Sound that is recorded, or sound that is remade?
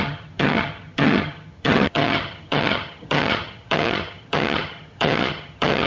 remade